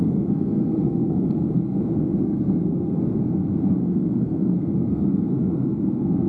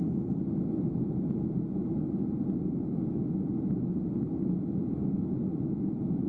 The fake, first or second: first